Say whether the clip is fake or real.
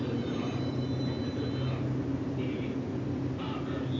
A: real